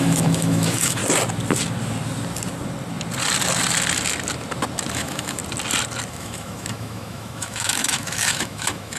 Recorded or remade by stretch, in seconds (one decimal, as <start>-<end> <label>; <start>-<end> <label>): 0.0-1.0 remade; 1.0-4.9 recorded; 4.9-5.4 remade; 5.4-6.1 recorded; 6.1-9.0 remade